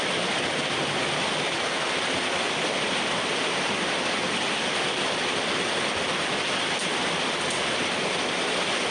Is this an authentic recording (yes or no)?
yes